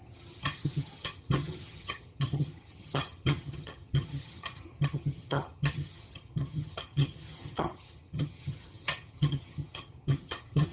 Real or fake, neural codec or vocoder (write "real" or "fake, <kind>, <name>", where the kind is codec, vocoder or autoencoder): fake, vocoder, HiFi-GAN